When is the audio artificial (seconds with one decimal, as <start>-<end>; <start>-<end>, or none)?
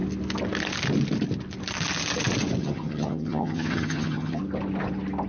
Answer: 2.6-4.4